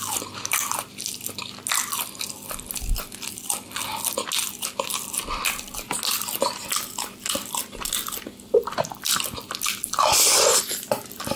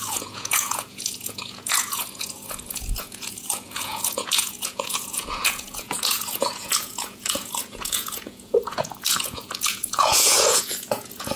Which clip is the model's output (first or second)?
second